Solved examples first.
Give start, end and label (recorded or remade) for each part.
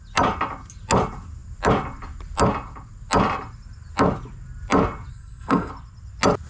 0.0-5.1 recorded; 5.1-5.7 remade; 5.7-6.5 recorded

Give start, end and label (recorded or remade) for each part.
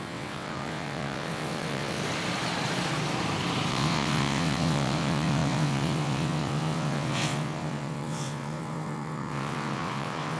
0.0-2.0 remade; 2.0-3.7 recorded; 3.7-10.4 remade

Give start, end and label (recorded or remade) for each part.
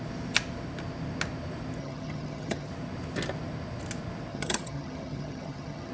0.0-1.8 recorded; 1.8-2.7 remade; 2.7-4.3 recorded; 4.3-5.9 remade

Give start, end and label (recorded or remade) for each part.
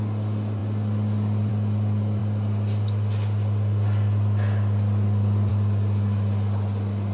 0.0-7.1 recorded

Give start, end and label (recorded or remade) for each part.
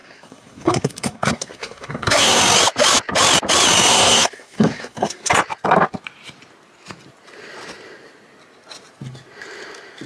0.0-2.4 remade; 2.4-3.9 recorded; 3.9-5.3 remade; 5.3-10.1 recorded